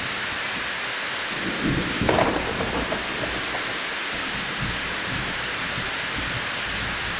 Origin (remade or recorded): recorded